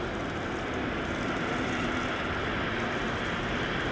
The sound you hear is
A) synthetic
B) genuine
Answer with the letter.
B